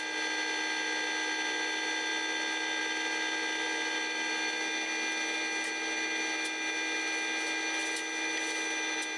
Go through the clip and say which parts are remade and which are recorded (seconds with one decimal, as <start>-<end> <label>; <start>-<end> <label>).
0.0-9.2 recorded